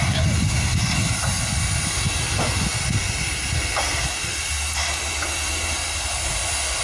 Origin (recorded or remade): recorded